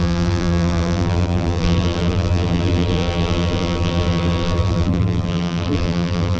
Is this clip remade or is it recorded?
remade